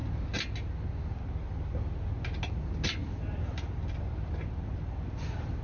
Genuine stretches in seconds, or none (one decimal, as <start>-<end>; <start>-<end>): 0.0-5.6